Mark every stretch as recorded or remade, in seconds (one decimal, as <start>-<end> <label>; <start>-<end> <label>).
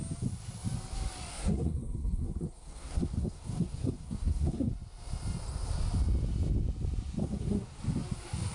0.0-1.3 recorded; 1.3-4.7 remade; 4.7-7.2 recorded; 7.2-7.8 remade; 7.8-8.5 recorded